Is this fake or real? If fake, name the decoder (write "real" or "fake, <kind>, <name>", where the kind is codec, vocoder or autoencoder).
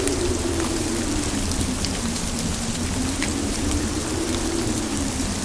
real